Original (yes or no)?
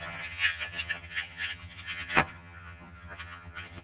no